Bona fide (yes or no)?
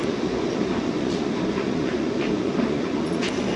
no